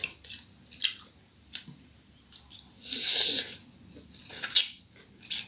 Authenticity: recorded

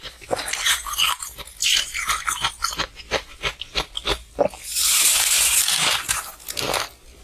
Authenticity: recorded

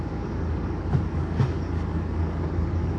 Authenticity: remade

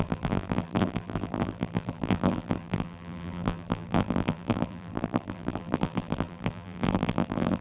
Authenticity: remade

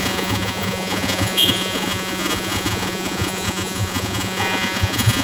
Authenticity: remade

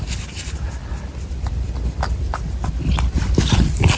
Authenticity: recorded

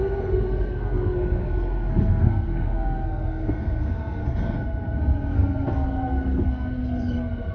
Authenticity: remade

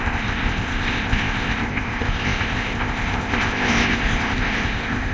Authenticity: remade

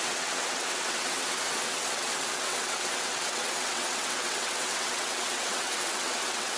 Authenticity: remade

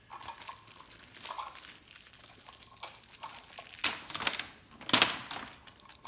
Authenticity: recorded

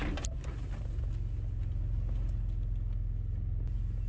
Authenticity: recorded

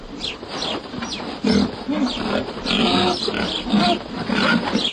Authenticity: recorded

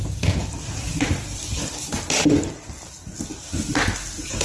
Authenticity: recorded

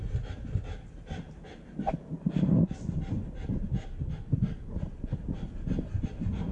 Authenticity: recorded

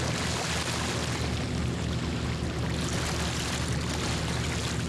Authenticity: recorded